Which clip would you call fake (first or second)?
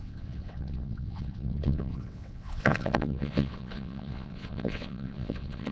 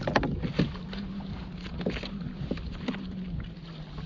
first